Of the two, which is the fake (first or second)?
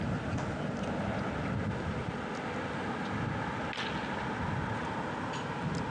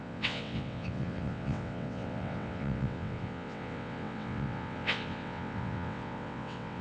second